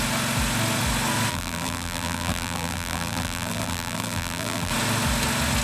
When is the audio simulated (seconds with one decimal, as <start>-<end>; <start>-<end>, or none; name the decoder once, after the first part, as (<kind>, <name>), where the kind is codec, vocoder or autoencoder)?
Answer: 1.3-4.7 (vocoder, BigVGAN v2)